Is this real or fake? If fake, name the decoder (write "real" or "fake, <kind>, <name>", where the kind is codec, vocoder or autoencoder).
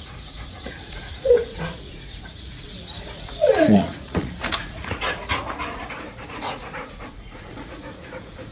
fake, vocoder, Vocos